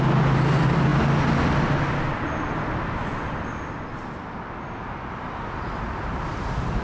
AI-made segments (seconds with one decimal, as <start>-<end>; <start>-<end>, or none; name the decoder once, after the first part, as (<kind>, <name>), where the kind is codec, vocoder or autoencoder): none